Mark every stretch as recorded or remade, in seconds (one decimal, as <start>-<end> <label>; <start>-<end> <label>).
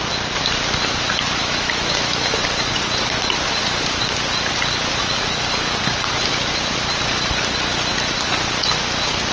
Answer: 0.0-1.4 recorded; 1.4-2.3 remade; 2.3-9.3 recorded